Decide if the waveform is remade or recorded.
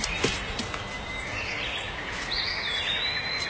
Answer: recorded